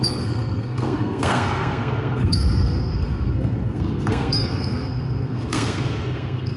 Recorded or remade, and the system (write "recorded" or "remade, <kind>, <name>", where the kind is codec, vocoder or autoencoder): remade, codec, SNAC